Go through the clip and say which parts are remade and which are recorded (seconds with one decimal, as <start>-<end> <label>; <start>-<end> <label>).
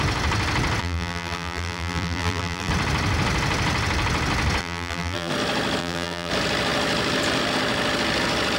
0.0-0.8 recorded; 0.8-2.7 remade; 2.7-4.6 recorded; 4.6-5.3 remade; 5.3-5.8 recorded; 5.8-6.3 remade; 6.3-8.6 recorded